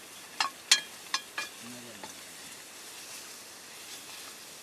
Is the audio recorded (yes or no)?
yes